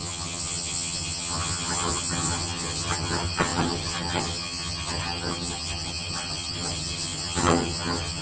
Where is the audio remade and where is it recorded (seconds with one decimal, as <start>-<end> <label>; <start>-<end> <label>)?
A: 0.0-8.2 remade